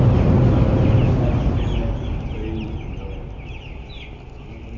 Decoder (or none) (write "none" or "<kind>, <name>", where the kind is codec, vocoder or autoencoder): none